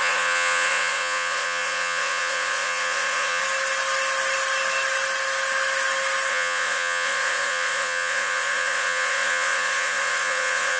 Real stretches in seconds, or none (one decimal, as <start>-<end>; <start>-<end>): 3.4-6.3